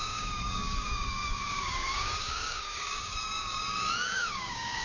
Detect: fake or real fake